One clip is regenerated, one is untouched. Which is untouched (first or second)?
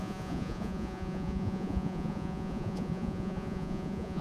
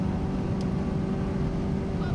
second